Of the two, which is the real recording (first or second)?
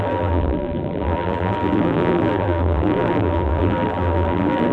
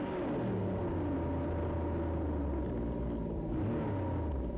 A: second